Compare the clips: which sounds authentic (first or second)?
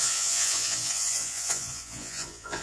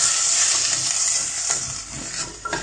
second